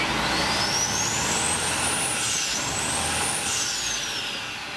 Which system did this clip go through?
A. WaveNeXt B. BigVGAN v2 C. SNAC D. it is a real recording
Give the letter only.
D